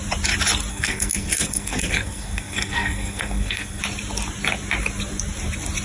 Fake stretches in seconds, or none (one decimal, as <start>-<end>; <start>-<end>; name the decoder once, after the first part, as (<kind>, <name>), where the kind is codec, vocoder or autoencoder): 0.7-3.8 (codec, SNAC)